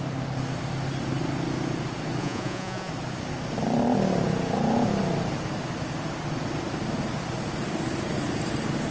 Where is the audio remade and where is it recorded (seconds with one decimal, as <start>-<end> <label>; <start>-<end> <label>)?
0.0-2.2 recorded; 2.2-2.9 remade; 2.9-8.9 recorded